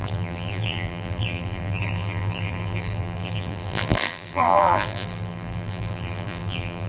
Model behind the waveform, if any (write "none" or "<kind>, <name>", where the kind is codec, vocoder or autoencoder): vocoder, BigVGAN v2